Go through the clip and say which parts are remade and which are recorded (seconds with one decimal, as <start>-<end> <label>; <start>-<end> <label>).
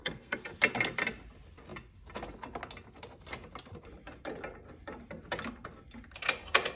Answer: 0.0-0.6 remade; 0.6-6.8 recorded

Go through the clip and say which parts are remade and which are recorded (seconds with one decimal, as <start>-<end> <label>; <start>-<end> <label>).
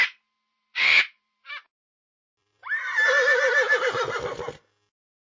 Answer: 0.0-0.5 recorded; 0.5-1.5 remade; 1.5-2.4 recorded; 2.4-3.0 remade; 3.0-5.3 recorded